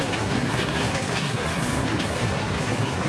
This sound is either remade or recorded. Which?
remade